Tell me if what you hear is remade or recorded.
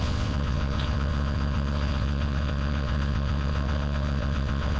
remade